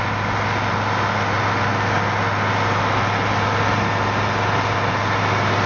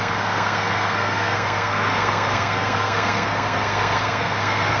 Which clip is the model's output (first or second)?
second